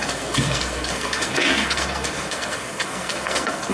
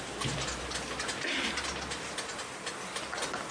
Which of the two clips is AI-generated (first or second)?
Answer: first